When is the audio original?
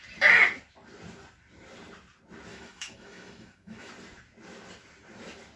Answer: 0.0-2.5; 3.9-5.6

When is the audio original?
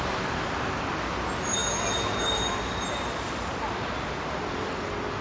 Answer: 0.0-5.2